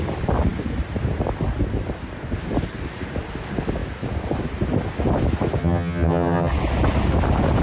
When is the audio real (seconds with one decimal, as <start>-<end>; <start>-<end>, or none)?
0.0-5.6; 6.5-7.6